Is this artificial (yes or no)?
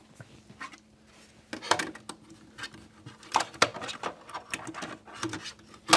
no